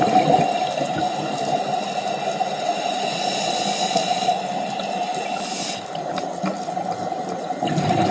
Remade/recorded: recorded